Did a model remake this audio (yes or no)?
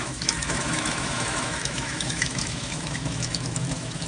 yes